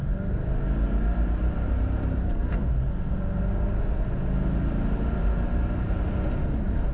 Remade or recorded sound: recorded